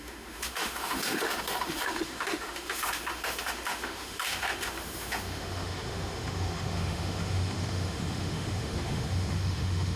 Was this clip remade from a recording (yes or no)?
yes